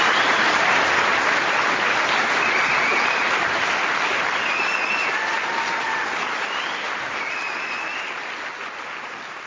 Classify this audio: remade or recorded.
recorded